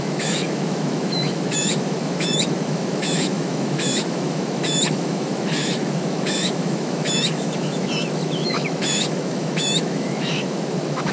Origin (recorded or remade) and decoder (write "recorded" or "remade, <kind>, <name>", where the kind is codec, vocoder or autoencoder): remade, autoencoder, DAC-VAE